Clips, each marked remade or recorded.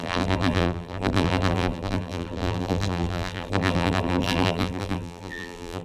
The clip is remade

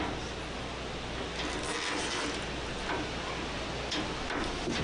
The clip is recorded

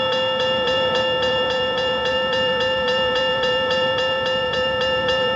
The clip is remade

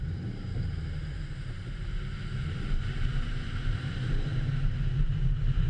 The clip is remade